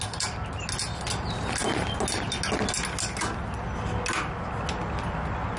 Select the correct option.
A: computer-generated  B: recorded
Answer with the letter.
B